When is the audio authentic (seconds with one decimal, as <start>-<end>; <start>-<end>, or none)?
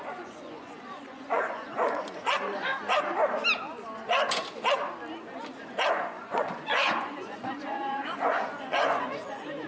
2.7-5.9